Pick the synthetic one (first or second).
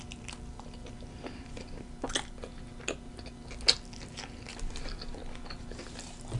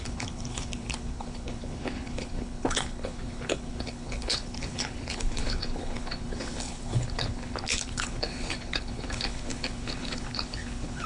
second